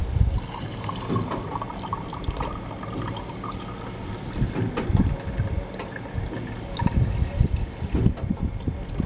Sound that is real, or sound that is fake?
real